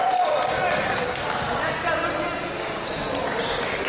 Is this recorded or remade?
recorded